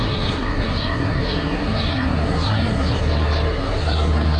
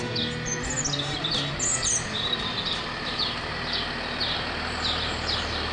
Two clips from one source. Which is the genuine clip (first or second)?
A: second